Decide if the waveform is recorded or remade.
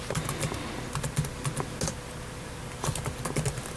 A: recorded